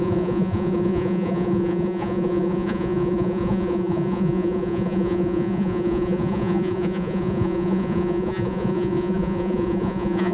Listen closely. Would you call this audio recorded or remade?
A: remade